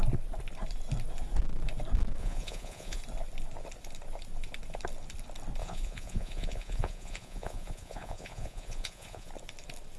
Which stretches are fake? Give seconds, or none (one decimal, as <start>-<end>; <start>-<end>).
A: 2.2-3.0; 5.6-9.3